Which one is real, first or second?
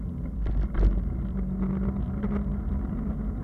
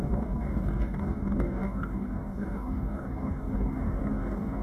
first